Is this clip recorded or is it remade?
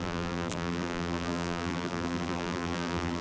remade